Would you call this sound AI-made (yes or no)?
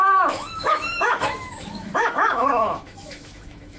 yes